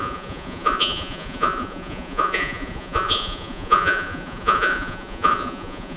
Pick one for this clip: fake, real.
fake